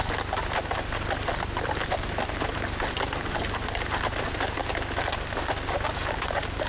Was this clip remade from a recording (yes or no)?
no